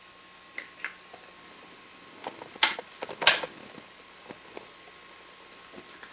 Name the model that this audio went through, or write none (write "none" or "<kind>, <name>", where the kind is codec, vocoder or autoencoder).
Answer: none